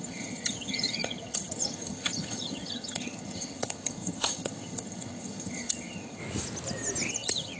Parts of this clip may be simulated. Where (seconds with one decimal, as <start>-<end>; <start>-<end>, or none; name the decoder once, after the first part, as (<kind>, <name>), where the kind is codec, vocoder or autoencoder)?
0.0-6.2 (vocoder, HiFi-GAN); 7.1-7.6